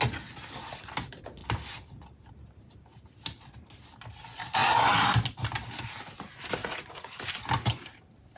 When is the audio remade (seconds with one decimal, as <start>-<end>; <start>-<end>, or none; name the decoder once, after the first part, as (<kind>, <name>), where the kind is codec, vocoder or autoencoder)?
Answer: 6.6-7.2 (vocoder, Vocos)